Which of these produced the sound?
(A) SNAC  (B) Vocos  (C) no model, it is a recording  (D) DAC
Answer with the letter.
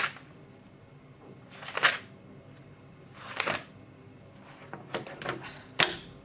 C